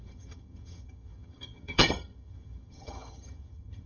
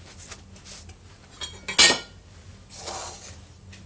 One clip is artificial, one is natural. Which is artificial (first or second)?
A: first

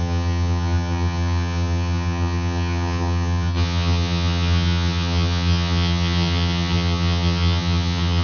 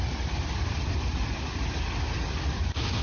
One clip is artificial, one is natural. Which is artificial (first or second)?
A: first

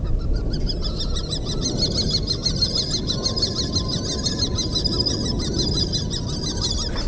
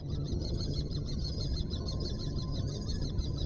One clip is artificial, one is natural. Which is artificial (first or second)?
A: second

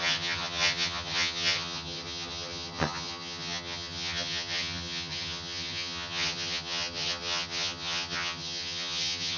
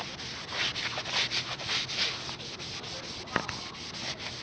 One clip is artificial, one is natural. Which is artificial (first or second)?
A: first